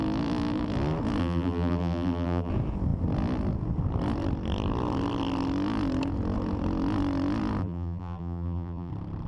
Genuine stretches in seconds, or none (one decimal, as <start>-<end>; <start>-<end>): 0.0-1.2; 2.5-7.6; 8.9-9.3